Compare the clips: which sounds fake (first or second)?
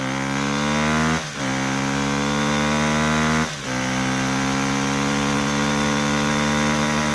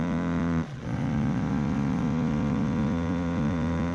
second